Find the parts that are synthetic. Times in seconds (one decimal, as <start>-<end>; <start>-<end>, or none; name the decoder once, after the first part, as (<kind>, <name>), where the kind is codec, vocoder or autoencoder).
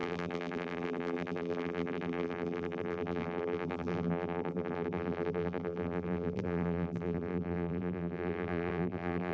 0.0-9.3 (vocoder, BigVGAN v2)